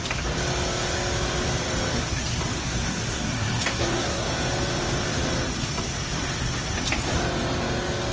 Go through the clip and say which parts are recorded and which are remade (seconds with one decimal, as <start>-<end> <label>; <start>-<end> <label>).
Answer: 0.0-2.6 recorded; 2.6-4.3 remade; 4.3-8.1 recorded